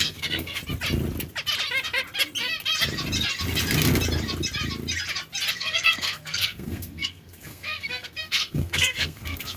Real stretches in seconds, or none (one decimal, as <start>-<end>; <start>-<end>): 0.6-5.5